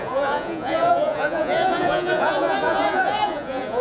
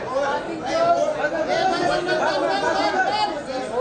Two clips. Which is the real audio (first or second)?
second